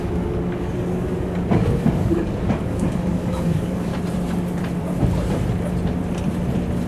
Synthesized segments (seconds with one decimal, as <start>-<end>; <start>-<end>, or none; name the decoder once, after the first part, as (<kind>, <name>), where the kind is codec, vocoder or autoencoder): 0.0-3.9 (codec, DAC)

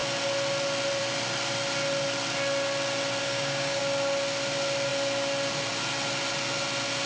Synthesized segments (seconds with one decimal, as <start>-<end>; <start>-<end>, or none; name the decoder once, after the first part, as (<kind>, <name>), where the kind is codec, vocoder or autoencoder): 3.2-3.8 (codec, DAC)